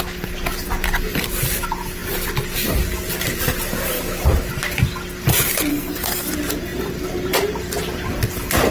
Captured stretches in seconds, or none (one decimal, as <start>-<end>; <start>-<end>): 0.0-5.7; 6.2-8.7